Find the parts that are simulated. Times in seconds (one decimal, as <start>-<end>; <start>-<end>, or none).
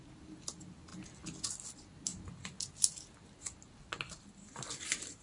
none